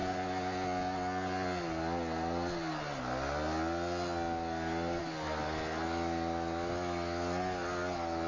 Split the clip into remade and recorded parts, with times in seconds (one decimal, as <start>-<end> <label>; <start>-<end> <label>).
0.0-8.3 recorded